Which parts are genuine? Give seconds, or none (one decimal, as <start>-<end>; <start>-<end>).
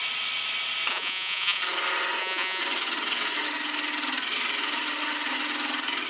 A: 0.0-0.9; 1.6-2.2; 2.6-6.1